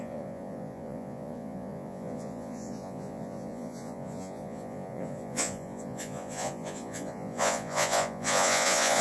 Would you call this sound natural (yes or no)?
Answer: no